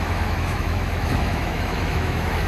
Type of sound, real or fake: fake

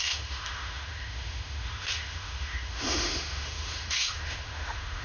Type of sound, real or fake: fake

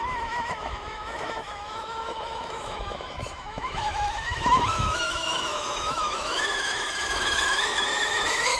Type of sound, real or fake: fake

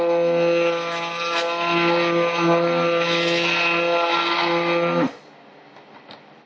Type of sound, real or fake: real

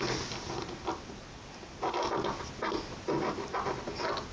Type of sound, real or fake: real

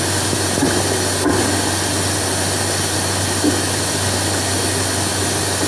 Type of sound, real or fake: real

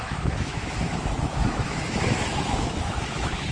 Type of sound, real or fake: fake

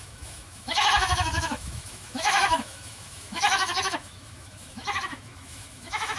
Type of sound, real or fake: fake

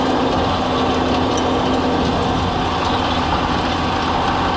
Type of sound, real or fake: real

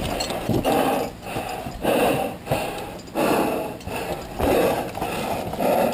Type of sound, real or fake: real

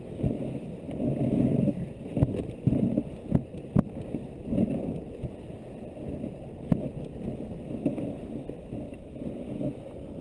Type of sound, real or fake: real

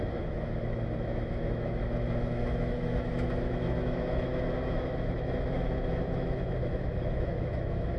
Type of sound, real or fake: fake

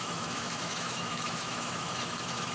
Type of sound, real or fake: fake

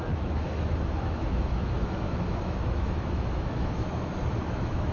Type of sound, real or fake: fake